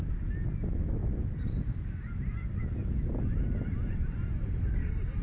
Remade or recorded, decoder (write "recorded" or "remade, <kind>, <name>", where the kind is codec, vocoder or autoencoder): recorded